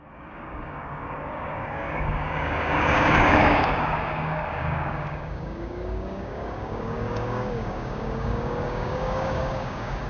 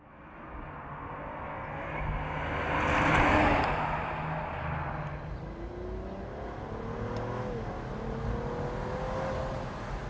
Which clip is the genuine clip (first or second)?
second